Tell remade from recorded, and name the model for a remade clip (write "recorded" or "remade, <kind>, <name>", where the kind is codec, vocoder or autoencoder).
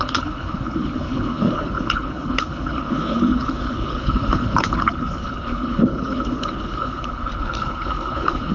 remade, codec, HILCodec